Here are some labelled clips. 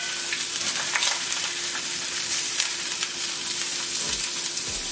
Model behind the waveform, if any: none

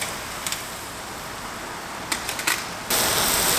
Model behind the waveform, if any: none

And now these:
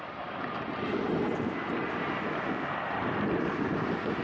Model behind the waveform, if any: none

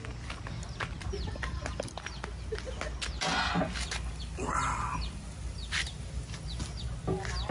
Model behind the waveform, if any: none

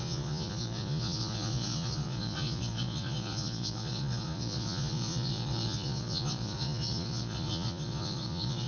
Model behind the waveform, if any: vocoder, Vocos